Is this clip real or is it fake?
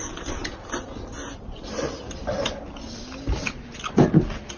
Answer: real